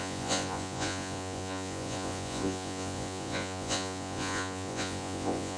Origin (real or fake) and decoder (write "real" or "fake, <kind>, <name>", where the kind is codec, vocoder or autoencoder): fake, vocoder, Vocos